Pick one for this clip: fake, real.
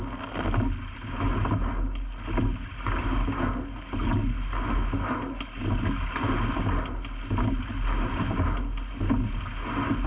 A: real